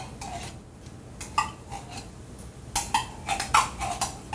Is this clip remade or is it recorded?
recorded